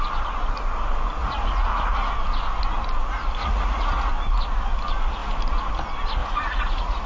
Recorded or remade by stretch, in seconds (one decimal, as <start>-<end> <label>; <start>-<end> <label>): 0.0-1.2 recorded; 1.2-2.1 remade; 2.1-3.4 recorded; 3.4-4.1 remade; 4.1-6.2 recorded; 6.2-7.1 remade